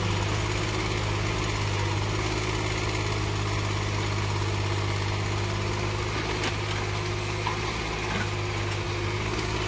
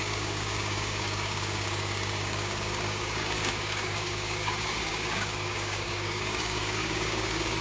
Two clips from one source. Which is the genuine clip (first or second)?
first